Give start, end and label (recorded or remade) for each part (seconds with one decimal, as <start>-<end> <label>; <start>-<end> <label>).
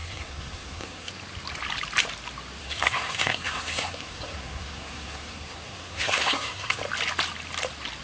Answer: 0.0-1.1 remade; 1.1-2.6 recorded; 2.6-6.8 remade; 6.8-8.0 recorded